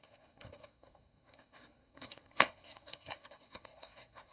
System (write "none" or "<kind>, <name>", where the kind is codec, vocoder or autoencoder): codec, SNAC